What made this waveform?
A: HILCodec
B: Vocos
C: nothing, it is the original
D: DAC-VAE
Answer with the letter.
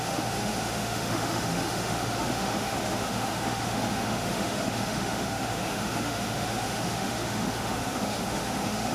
D